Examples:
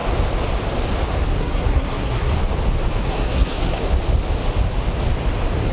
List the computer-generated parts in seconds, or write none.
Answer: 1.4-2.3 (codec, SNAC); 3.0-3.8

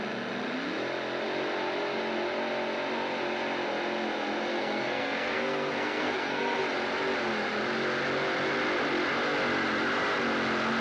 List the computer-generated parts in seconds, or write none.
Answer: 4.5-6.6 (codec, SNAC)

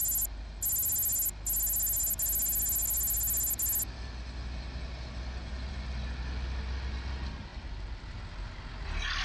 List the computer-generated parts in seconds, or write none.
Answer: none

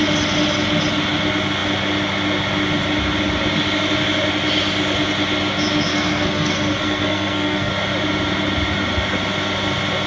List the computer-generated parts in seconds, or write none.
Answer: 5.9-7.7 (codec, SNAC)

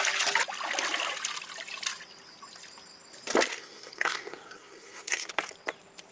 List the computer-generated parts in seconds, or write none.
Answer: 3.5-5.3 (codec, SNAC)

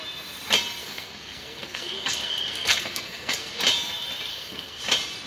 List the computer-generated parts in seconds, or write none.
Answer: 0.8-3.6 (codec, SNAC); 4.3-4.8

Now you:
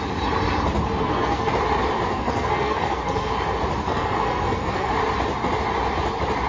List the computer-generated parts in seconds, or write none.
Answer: 1.0-1.5 (codec, SNAC); 2.1-3.3; 3.8-4.9